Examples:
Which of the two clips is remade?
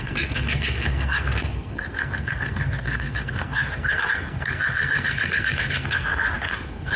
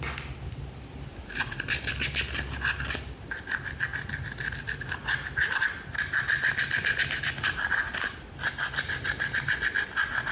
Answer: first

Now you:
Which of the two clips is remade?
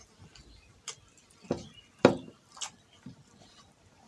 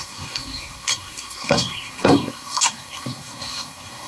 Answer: second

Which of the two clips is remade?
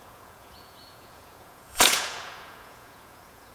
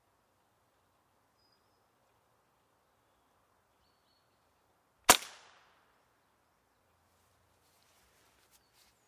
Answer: first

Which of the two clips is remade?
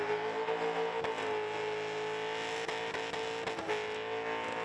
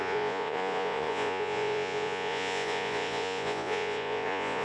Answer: second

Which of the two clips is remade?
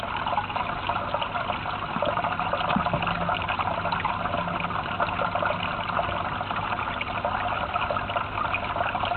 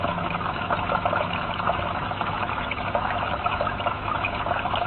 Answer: second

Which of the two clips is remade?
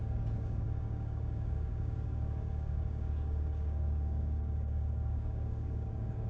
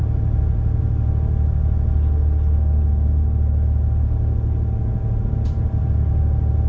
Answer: first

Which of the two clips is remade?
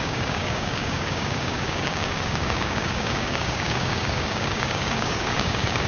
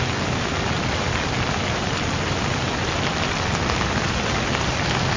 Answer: first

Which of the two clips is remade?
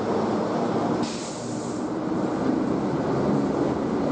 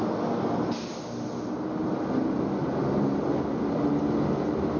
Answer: first